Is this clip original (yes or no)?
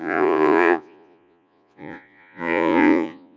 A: no